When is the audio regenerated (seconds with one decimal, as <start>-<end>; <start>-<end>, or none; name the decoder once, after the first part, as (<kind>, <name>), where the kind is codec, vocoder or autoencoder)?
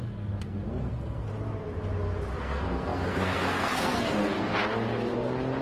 0.0-1.3 (codec, SNAC); 2.4-4.5